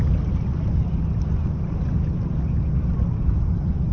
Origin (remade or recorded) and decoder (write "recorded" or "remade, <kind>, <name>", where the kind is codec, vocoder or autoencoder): recorded